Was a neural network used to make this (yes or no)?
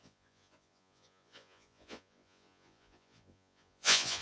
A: yes